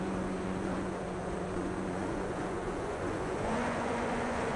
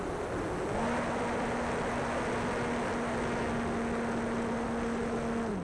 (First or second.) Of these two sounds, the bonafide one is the second